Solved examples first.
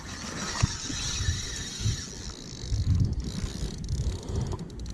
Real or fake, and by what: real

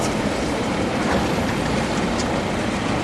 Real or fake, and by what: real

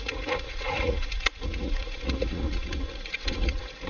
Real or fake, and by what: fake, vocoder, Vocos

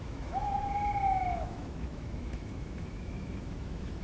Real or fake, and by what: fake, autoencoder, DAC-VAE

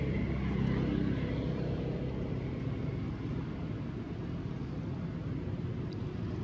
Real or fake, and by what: real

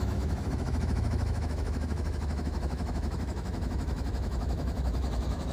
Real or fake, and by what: fake, autoencoder, DAC-VAE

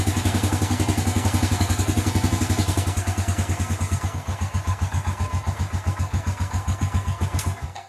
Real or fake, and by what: fake, codec, SNAC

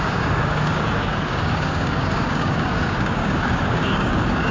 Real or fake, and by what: fake, codec, DAC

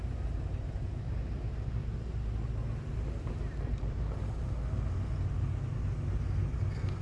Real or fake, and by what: real